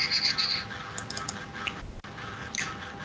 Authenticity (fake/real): real